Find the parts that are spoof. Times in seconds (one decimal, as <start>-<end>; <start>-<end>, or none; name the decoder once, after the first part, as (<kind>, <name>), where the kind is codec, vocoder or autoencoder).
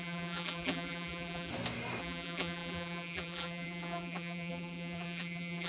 0.0-1.5 (vocoder, BigVGAN v2); 2.0-5.7